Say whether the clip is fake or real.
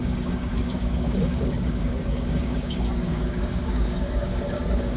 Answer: fake